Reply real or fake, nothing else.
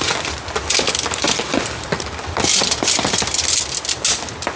real